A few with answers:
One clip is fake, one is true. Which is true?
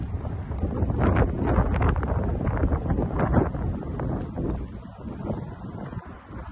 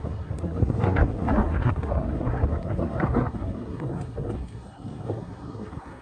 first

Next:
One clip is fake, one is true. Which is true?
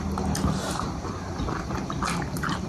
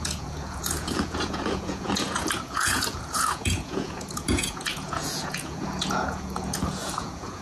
first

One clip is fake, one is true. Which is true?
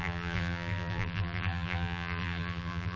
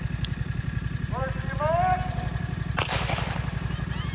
second